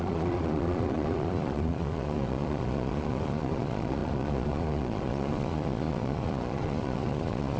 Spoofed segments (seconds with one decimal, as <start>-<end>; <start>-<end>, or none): 0.0-7.6